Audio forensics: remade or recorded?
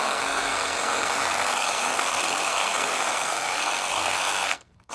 remade